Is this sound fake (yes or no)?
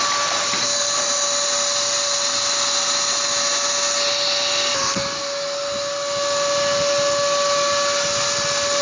no